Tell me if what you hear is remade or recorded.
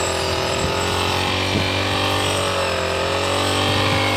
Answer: recorded